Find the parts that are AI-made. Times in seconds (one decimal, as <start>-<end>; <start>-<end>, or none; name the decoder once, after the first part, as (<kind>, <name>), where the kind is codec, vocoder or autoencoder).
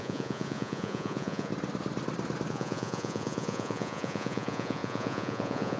0.0-1.5 (vocoder, Vocos); 2.5-5.8